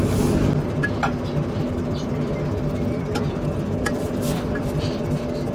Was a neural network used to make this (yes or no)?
no